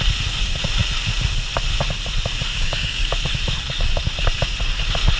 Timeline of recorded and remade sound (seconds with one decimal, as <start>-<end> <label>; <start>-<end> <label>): 0.0-2.5 recorded; 2.5-3.0 remade; 3.0-5.2 recorded